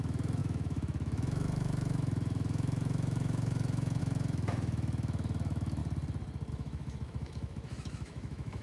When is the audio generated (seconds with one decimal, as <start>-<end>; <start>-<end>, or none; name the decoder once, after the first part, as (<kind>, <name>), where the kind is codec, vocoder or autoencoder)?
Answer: 0.0-5.8 (autoencoder, DAC-VAE); 6.5-8.6